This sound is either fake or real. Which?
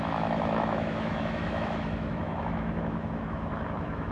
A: fake